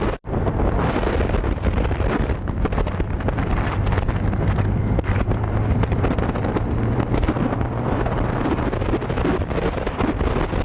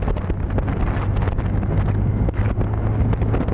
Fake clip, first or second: first